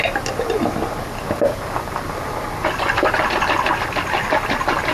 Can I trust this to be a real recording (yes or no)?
yes